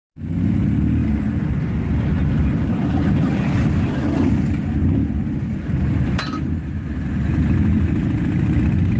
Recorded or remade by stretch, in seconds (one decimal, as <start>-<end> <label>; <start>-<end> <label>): 0.0-9.0 recorded